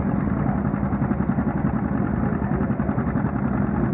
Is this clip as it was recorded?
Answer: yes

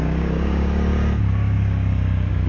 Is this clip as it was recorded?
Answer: no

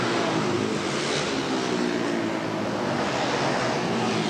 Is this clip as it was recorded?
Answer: yes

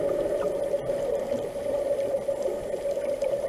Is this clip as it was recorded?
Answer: yes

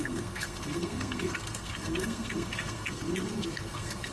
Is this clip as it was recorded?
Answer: no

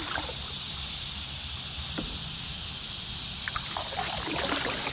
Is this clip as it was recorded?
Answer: yes